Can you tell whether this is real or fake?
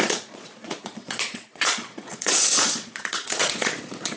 fake